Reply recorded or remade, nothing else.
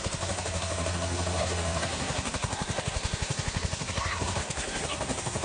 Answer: remade